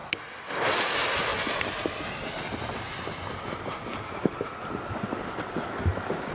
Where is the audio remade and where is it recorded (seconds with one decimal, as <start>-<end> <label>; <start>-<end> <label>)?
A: 0.0-6.3 recorded